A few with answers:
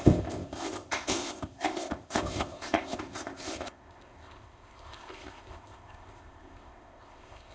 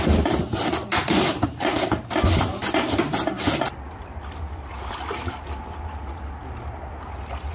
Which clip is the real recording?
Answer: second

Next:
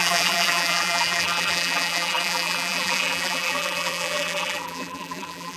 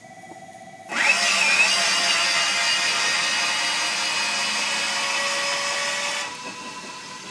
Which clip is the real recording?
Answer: second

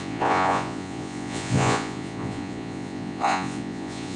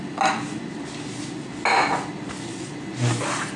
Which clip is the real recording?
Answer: second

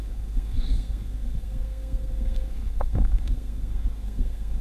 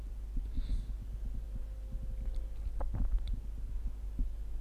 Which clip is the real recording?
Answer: second